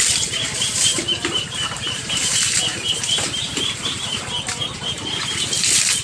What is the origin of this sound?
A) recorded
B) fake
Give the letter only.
B